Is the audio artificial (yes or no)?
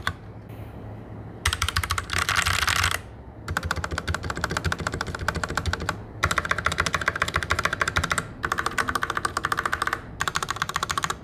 no